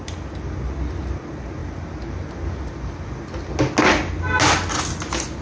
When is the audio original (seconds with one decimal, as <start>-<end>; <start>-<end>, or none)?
0.0-5.4